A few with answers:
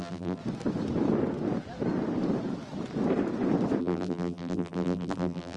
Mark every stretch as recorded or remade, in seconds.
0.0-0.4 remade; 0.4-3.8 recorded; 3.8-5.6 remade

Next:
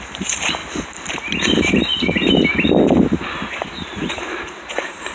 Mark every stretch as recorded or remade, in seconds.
0.0-0.6 remade; 0.6-3.7 recorded; 3.7-5.1 remade

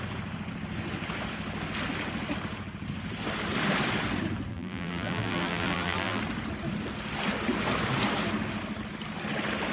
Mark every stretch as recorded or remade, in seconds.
0.0-4.5 recorded; 4.5-6.2 remade; 6.2-9.7 recorded

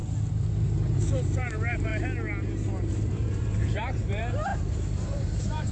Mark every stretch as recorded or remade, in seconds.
0.0-0.9 recorded; 0.9-1.9 remade; 1.9-2.9 recorded; 2.9-5.7 remade

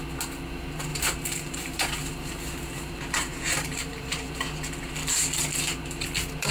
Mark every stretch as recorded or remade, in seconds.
0.0-0.9 recorded; 0.9-4.3 remade; 4.3-6.5 recorded